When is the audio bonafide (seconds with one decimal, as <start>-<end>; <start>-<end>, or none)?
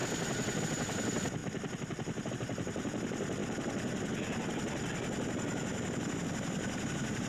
0.0-0.6; 1.4-2.3; 3.4-6.1